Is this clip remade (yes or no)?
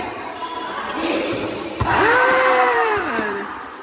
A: yes